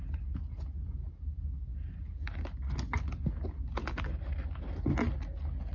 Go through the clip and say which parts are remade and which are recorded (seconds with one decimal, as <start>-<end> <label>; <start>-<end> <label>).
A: 0.0-5.7 recorded